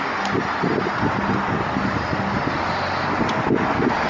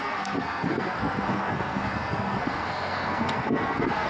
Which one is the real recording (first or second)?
first